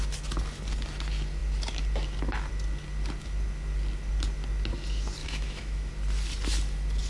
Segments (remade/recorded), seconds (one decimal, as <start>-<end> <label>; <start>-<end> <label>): 0.0-5.2 recorded; 5.2-5.9 remade; 5.9-7.1 recorded